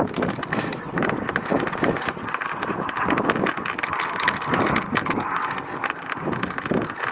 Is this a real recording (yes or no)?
yes